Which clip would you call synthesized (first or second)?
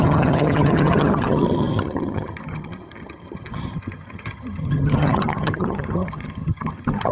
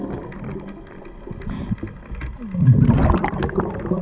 first